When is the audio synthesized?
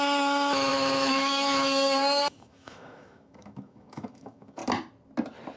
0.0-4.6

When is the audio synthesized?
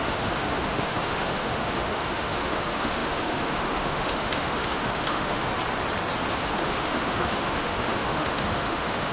0.0-5.5; 6.5-9.1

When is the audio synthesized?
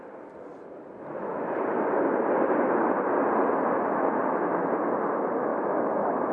5.5-6.3